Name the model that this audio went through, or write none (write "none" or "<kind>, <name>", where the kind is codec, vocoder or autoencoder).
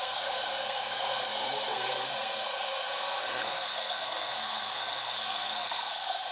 codec, SNAC